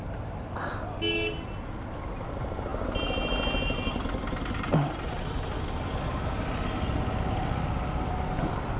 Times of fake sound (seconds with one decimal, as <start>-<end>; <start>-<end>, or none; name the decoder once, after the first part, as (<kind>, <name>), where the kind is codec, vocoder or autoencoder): none